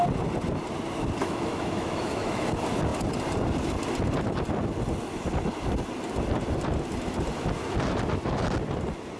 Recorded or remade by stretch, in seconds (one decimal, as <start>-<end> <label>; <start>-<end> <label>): 0.0-1.2 recorded; 1.2-2.5 remade; 2.5-9.2 recorded

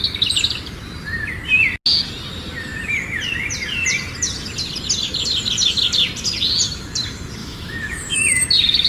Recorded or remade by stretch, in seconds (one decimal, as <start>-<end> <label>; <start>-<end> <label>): 0.0-7.4 recorded; 7.4-8.4 remade; 8.4-8.9 recorded

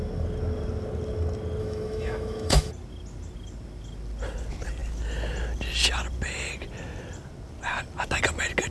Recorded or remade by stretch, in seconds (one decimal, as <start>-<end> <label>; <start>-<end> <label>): 0.0-1.6 recorded; 1.6-2.7 remade; 2.7-8.7 recorded

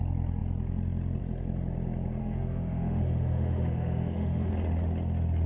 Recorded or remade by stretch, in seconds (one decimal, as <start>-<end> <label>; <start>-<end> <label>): 0.0-2.2 recorded; 2.2-4.5 remade; 4.5-5.5 recorded

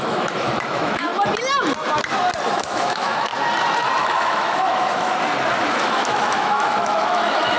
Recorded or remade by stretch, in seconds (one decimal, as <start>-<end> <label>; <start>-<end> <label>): 0.0-1.1 remade; 1.1-2.5 recorded; 2.5-3.3 remade; 3.3-4.0 recorded; 4.0-5.1 remade; 5.1-5.6 recorded; 5.6-7.6 remade

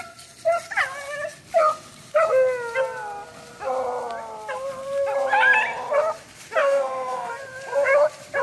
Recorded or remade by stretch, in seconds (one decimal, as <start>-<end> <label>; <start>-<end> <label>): 0.0-6.6 recorded; 6.6-7.3 remade; 7.3-8.4 recorded

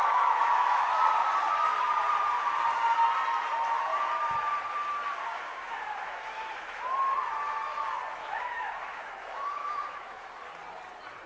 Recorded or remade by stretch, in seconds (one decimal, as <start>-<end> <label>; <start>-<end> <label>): 0.0-1.0 remade; 1.0-5.3 recorded; 5.3-6.8 remade; 6.8-8.2 recorded; 8.2-10.3 remade; 10.3-11.3 recorded